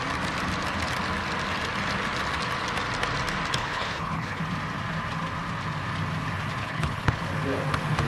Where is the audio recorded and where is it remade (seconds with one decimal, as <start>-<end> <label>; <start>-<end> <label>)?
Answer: 0.0-3.6 recorded; 3.6-4.4 remade; 4.4-6.6 recorded; 6.6-7.2 remade; 7.2-8.1 recorded